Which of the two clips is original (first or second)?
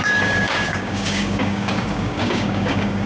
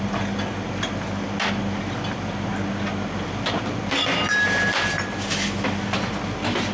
second